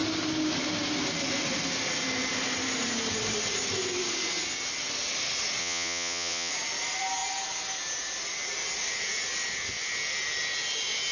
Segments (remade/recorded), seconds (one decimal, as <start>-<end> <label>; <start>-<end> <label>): 0.0-5.6 recorded; 5.6-6.5 remade; 6.5-11.1 recorded